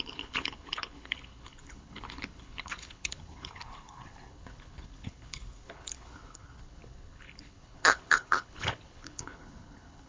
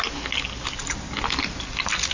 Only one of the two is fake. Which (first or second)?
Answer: first